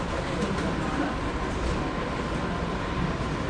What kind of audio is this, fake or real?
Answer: real